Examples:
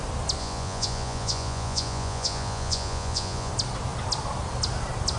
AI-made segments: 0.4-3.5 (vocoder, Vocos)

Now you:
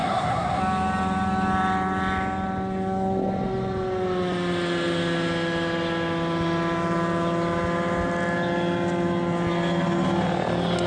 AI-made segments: 0.0-0.6 (codec, SNAC)

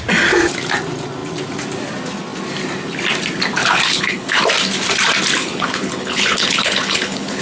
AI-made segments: 3.6-4.4 (codec, HILCodec); 5.4-7.4

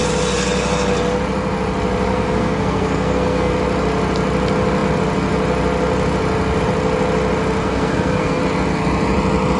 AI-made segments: 2.1-3.5 (codec, SNAC); 7.6-8.4

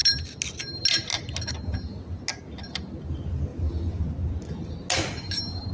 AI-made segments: none

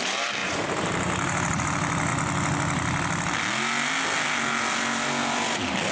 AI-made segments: 0.4-1.6 (vocoder, BigVGAN v2)